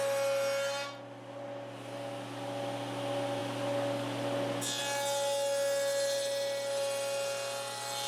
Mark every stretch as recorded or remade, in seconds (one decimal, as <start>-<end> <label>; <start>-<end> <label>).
0.0-8.1 recorded